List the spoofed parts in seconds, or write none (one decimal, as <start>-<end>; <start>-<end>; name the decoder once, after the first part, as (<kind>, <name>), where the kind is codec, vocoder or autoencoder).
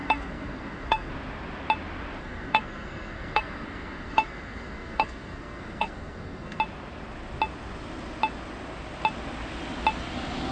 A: 0.0-1.1 (codec, SNAC); 2.2-6.6